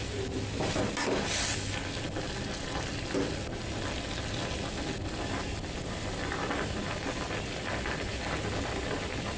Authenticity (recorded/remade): recorded